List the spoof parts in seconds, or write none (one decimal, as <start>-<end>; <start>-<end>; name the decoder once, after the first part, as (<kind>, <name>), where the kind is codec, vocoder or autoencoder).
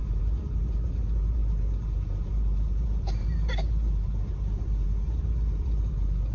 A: 0.0-6.3 (vocoder, BigVGAN v2)